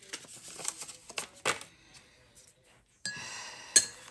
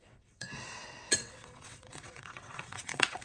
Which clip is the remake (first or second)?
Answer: second